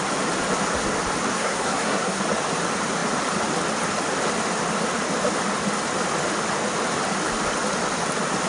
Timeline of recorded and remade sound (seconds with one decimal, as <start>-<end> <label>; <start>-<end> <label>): 0.0-1.3 recorded; 1.3-2.2 remade; 2.2-8.5 recorded